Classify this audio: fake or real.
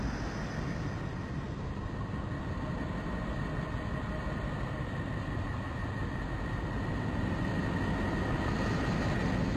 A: real